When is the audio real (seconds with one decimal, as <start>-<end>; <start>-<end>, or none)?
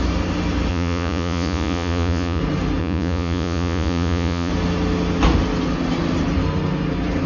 0.0-0.7; 2.4-2.8; 4.5-7.3